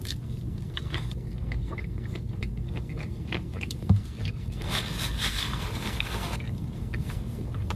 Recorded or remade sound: remade